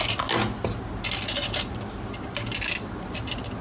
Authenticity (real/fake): real